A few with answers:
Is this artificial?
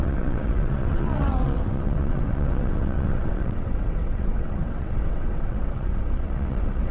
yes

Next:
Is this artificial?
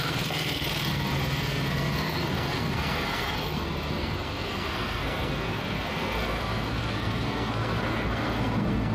yes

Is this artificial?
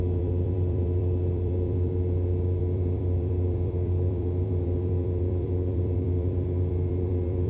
yes